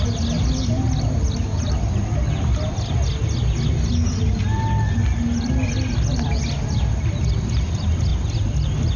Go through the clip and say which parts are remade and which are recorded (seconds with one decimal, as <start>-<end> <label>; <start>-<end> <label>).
0.0-9.0 recorded